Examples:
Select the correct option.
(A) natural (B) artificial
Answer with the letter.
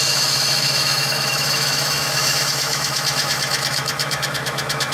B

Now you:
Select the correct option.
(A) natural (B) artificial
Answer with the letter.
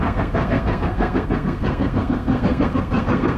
B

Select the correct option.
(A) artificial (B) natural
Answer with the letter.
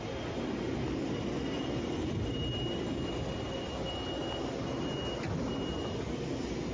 B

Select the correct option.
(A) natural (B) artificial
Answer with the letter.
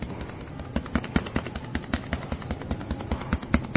A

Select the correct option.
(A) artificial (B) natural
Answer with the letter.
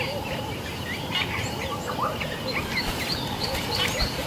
A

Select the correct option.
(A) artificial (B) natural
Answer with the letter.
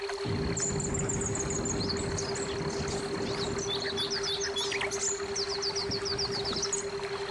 B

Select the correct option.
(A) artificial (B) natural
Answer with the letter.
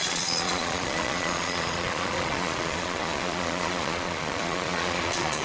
A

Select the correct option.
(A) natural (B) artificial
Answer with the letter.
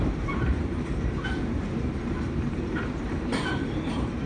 B